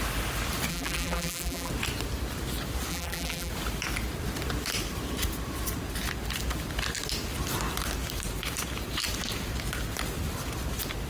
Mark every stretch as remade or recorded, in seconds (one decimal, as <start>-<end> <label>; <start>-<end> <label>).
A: 0.0-0.7 recorded; 0.7-1.7 remade; 1.7-2.9 recorded; 2.9-3.5 remade; 3.5-11.1 recorded